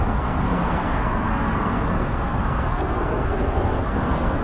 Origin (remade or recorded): remade